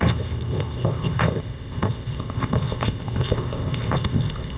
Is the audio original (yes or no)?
no